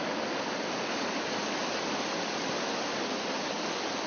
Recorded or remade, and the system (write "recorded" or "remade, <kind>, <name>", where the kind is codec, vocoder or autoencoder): recorded